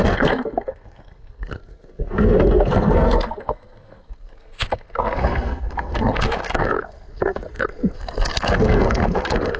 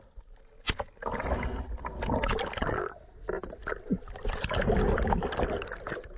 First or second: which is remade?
first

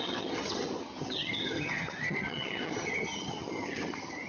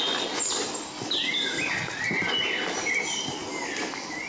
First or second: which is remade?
first